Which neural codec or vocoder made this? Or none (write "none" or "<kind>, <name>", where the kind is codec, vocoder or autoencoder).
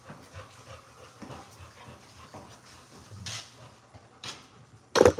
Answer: none